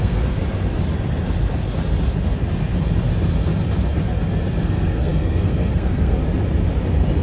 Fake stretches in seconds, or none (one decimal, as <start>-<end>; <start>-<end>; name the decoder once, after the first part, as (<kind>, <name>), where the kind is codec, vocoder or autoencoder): 0.0-0.4 (codec, SNAC); 4.6-6.2